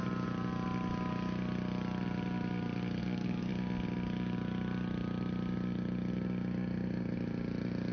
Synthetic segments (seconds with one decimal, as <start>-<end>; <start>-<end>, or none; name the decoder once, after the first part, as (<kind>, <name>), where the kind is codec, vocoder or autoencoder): 3.0-3.5 (codec, DAC)